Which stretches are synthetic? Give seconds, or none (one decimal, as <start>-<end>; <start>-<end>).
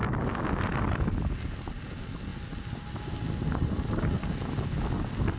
none